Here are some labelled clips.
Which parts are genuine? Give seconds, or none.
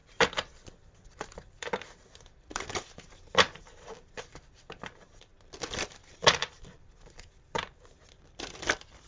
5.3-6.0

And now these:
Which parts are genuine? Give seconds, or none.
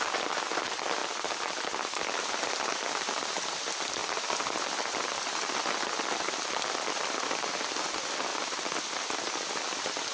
0.0-4.0; 7.2-8.3; 9.3-10.1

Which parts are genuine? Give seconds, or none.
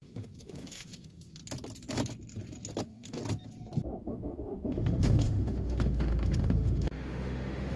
1.4-2.8; 3.2-4.0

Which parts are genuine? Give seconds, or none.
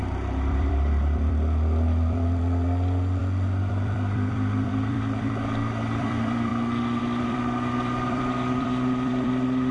6.5-7.0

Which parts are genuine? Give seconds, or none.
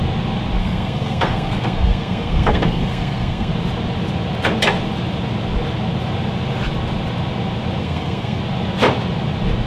0.0-0.6; 3.5-7.8; 8.4-9.7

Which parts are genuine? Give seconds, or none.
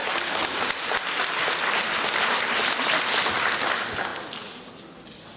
0.0-5.4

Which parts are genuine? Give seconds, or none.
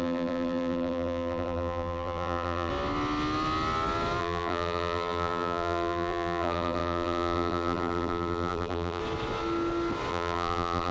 2.7-4.2; 9.0-10.1